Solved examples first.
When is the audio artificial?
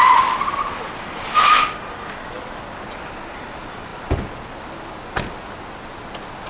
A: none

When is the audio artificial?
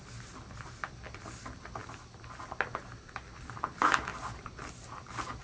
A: none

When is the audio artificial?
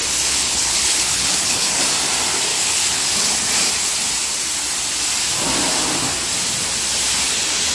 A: 0.0-1.7 (codec, HILCodec); 2.5-3.3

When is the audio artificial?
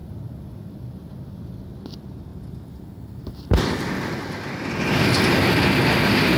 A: none